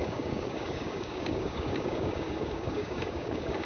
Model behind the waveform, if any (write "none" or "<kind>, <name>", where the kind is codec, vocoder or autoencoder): codec, DAC